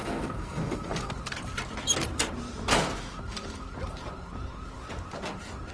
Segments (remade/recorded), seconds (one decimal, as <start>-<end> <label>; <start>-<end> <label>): 0.0-1.1 remade; 1.1-5.7 recorded